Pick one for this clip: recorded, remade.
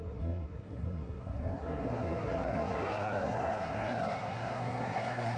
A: remade